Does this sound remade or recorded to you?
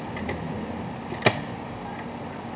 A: remade